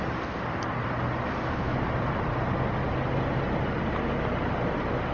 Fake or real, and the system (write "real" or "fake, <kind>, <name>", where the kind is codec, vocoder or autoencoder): real